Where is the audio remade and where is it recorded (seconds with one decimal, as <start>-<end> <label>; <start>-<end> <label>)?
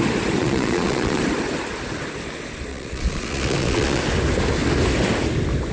0.0-0.4 recorded; 0.4-1.2 remade; 1.2-2.7 recorded; 2.7-4.0 remade; 4.0-5.7 recorded